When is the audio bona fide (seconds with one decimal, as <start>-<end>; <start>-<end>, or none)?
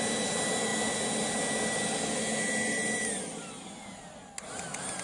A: 0.0-5.0